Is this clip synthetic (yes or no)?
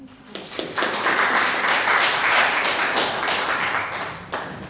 no